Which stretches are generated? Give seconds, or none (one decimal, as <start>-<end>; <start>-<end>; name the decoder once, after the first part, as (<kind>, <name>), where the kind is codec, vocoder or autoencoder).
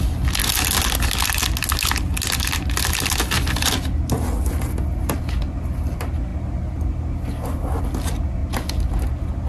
none